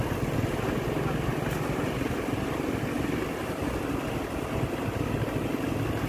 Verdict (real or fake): real